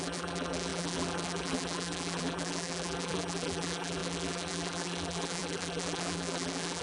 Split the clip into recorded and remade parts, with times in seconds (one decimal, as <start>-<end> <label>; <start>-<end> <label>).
0.0-6.8 remade